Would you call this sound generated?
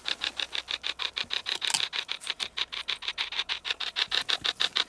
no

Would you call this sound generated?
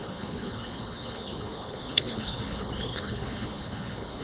yes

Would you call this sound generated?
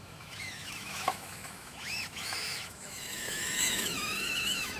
yes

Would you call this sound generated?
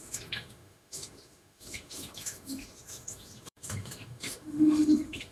yes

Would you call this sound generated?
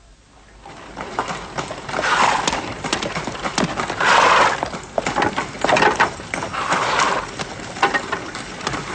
no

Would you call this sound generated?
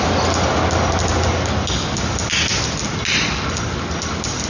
no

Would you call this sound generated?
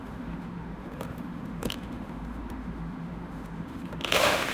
yes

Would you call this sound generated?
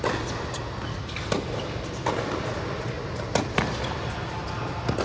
no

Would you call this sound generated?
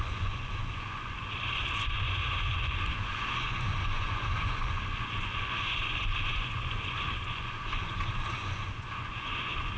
yes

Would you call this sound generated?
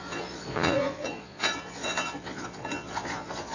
yes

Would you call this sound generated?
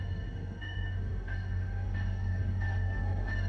yes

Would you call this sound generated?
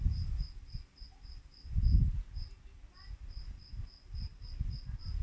no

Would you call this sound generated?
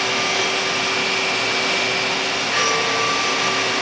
no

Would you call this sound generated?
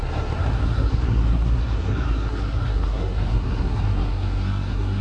yes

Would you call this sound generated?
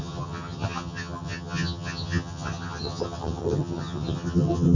yes